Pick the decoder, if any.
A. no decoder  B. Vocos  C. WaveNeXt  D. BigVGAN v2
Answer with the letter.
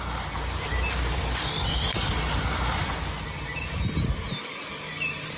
A